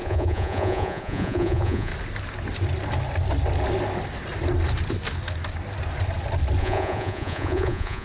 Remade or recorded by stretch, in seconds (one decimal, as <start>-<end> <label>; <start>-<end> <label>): 0.0-1.9 remade; 1.9-6.6 recorded; 6.6-8.0 remade